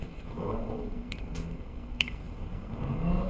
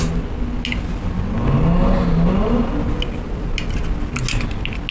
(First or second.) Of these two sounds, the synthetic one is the first